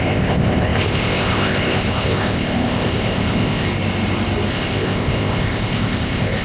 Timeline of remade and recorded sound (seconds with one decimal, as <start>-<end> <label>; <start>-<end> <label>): 0.0-3.7 remade; 3.7-4.5 recorded; 4.5-6.4 remade